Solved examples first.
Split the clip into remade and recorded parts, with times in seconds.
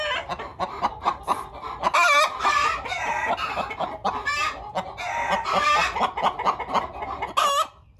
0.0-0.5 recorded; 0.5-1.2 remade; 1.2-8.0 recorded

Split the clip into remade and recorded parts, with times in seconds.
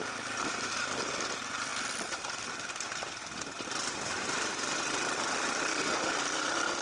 0.0-6.8 remade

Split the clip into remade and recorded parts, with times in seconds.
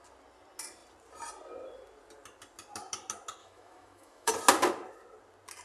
0.0-3.4 recorded; 3.4-4.3 remade; 4.3-5.6 recorded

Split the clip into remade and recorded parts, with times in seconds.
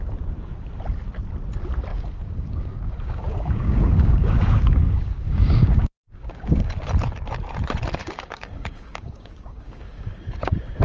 0.0-1.9 recorded; 1.9-6.7 remade; 6.7-8.0 recorded; 8.0-10.8 remade